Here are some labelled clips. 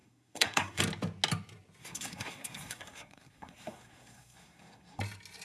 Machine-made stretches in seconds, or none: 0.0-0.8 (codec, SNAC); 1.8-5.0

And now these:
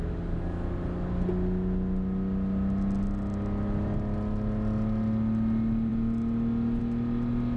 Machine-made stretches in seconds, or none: none